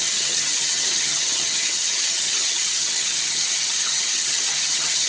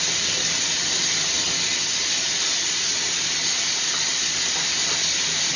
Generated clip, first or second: first